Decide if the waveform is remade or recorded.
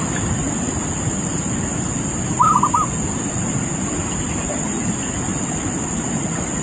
recorded